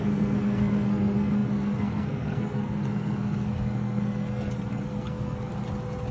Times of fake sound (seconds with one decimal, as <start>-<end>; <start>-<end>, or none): 0.0-5.5